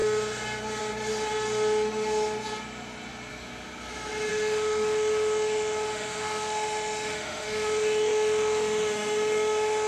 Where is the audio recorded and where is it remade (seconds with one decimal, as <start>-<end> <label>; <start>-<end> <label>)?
0.0-4.3 recorded; 4.3-9.9 remade

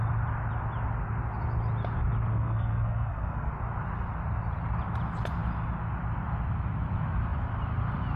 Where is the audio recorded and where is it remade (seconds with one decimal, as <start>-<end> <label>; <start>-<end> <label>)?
0.0-2.3 recorded; 2.3-3.5 remade; 3.5-8.2 recorded

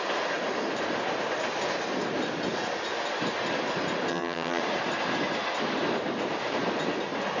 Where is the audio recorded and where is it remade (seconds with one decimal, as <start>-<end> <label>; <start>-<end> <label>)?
0.0-4.1 recorded; 4.1-4.6 remade; 4.6-7.4 recorded